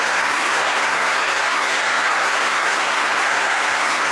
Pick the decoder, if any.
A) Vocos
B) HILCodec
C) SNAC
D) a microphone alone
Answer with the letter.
C